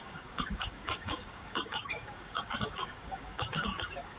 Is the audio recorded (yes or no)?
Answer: no